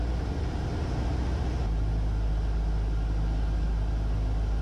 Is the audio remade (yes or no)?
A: no